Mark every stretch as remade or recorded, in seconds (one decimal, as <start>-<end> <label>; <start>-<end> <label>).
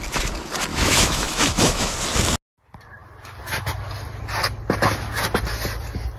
0.0-0.7 recorded; 0.7-1.9 remade; 1.9-6.2 recorded